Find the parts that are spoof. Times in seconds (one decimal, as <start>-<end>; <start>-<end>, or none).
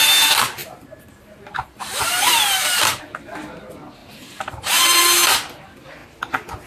0.6-3.0; 4.0-5.0